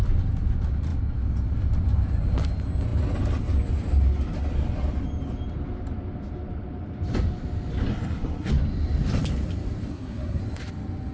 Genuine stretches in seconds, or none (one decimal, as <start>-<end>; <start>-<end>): 0.0-7.9; 8.5-9.9; 10.4-11.1